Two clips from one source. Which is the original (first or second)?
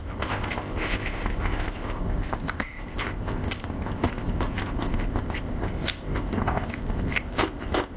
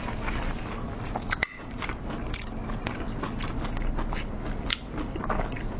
second